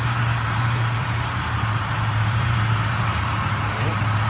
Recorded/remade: remade